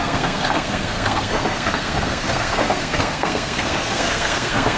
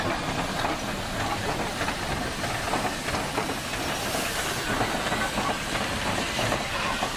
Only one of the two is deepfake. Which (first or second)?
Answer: first